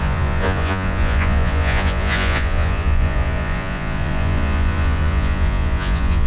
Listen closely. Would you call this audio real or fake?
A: fake